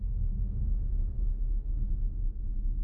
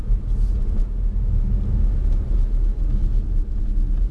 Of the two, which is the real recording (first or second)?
second